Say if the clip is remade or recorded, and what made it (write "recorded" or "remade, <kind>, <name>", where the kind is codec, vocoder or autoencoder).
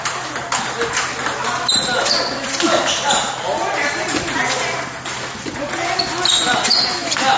recorded